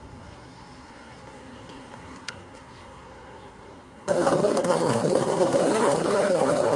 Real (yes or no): no